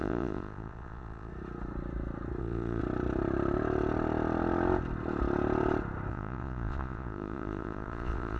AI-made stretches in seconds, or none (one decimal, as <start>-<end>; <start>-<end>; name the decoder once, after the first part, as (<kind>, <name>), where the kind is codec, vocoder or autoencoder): 0.0-1.3 (vocoder, Vocos); 2.4-2.8; 6.1-8.4